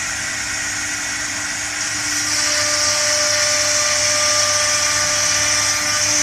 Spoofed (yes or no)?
no